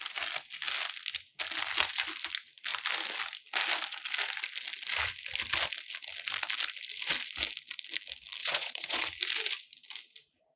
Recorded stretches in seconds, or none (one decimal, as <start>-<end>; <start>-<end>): 0.0-8.4; 9.0-10.6